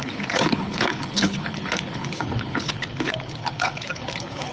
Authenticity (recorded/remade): remade